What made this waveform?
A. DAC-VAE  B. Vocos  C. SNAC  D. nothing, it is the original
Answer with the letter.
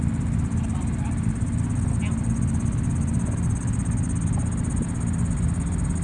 D